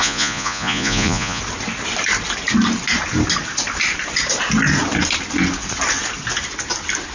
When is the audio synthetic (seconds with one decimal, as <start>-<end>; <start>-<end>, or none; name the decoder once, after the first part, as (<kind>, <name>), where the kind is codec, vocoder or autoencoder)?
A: 0.0-1.4 (vocoder, Vocos)